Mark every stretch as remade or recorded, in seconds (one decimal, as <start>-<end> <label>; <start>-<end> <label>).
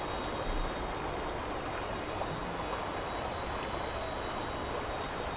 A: 0.0-5.4 recorded